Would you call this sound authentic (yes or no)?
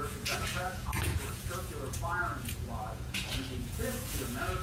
no